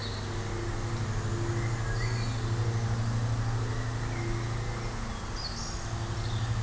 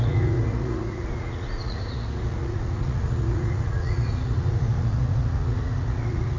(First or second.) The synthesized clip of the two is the second